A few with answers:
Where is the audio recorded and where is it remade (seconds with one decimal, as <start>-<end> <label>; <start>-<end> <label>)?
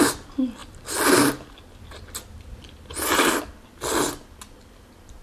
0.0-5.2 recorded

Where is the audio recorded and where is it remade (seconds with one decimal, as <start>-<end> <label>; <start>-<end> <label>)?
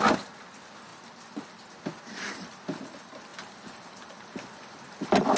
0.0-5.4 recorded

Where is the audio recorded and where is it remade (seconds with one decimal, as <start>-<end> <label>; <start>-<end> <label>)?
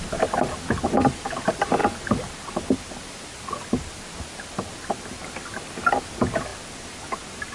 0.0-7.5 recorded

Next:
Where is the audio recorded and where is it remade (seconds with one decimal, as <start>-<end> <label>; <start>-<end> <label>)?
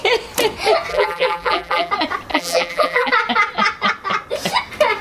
0.0-0.9 recorded; 0.9-1.9 remade; 1.9-2.3 recorded; 2.3-3.1 remade; 3.1-5.0 recorded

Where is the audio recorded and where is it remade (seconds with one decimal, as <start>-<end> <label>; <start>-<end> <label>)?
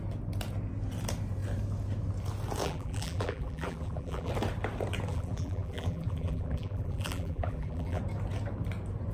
0.0-2.6 recorded; 2.6-4.3 remade; 4.3-5.1 recorded; 5.1-8.0 remade; 8.0-9.1 recorded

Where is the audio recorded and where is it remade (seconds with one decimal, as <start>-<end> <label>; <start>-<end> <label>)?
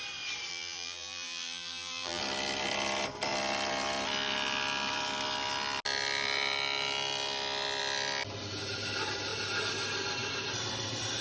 0.0-0.5 recorded; 0.5-2.2 remade; 2.2-11.2 recorded